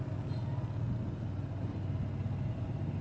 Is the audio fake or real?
real